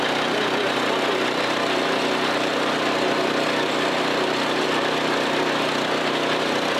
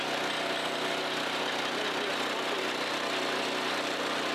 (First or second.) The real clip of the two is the second